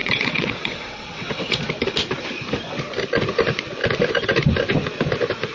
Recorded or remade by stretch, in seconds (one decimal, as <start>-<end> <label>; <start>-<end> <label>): 0.0-1.6 remade; 1.6-5.5 recorded